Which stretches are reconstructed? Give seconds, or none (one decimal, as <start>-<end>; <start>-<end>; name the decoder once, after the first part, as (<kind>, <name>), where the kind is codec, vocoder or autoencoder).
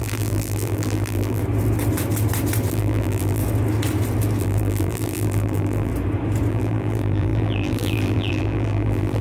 0.0-1.4 (vocoder, BigVGAN v2); 2.7-3.4; 4.4-5.9; 6.5-9.2